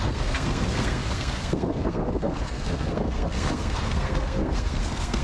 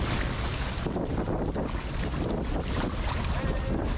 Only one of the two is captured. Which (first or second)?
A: second